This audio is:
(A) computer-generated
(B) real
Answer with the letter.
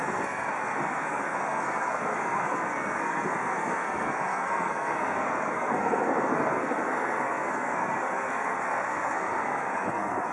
A